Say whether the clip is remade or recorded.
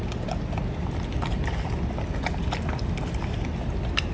recorded